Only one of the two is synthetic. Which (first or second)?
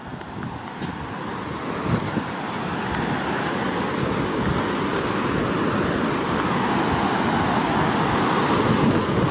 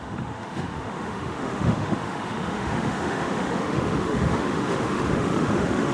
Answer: second